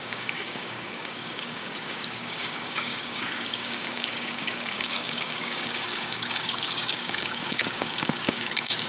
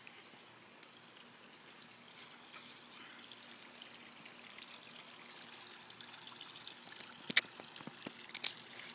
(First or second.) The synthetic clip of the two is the first